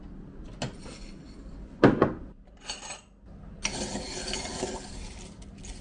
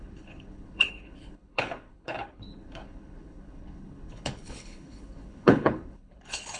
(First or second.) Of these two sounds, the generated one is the second